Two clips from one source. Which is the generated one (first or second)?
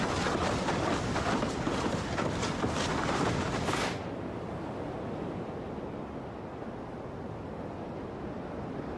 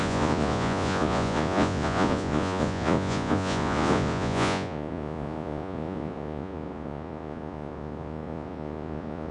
second